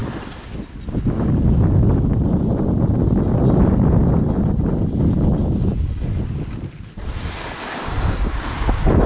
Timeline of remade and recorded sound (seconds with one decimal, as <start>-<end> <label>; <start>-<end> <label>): 0.0-9.1 recorded

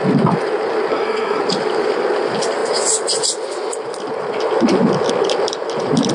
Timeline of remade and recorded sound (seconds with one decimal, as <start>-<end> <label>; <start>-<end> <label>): 0.0-0.9 recorded; 0.9-1.4 remade; 1.4-6.1 recorded

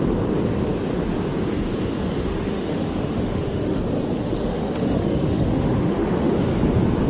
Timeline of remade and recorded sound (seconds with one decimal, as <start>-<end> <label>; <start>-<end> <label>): 0.0-2.3 recorded; 2.3-3.8 remade; 3.8-4.2 recorded; 4.2-6.3 remade; 6.3-7.1 recorded